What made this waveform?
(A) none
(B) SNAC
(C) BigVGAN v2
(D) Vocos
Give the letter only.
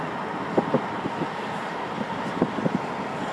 A